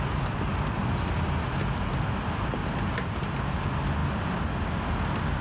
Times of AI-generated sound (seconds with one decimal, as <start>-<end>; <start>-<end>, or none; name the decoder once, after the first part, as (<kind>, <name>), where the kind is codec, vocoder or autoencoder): none